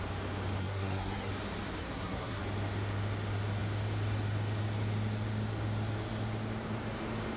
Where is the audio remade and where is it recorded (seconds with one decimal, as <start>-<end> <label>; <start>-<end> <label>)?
0.0-0.6 recorded; 0.6-1.3 remade; 1.3-1.8 recorded; 1.8-2.4 remade; 2.4-7.4 recorded

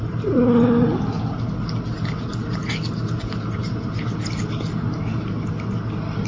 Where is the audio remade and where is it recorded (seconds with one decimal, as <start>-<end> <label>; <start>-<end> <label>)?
0.0-6.3 recorded